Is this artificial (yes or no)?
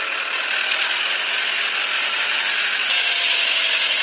no